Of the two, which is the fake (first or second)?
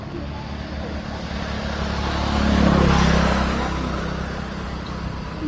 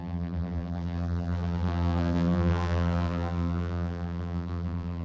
second